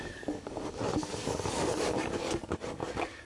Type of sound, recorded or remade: remade